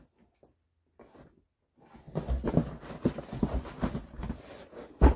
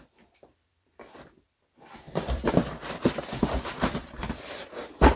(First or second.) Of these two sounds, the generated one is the second